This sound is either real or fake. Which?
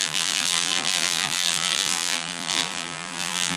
fake